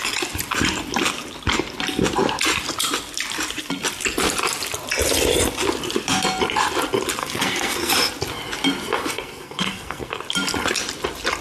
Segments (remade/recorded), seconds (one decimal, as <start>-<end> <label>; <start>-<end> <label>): 0.0-7.2 recorded; 7.2-7.9 remade; 7.9-9.0 recorded; 9.0-10.2 remade; 10.2-11.4 recorded

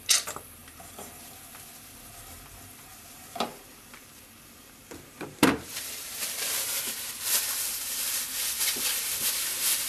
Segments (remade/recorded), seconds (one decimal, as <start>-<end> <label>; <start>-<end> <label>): 0.0-0.6 recorded; 0.6-1.3 remade; 1.3-2.9 recorded; 2.9-8.2 remade; 8.2-9.9 recorded